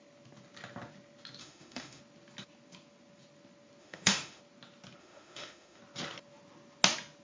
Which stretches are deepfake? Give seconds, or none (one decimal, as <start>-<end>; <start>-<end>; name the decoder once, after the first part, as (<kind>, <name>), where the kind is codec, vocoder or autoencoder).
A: 1.4-2.0 (autoencoder, DAC-VAE); 3.8-4.4; 5.0-5.8